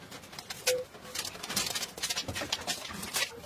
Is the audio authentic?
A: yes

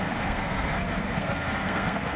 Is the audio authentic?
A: no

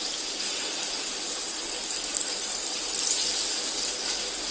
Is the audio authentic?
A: yes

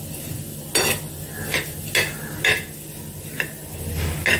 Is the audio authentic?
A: yes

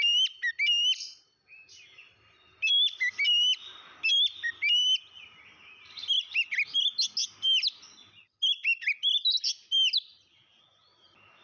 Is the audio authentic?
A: yes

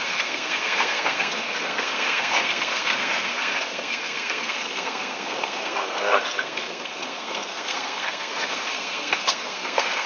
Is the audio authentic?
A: no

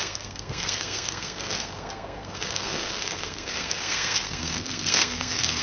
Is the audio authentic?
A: no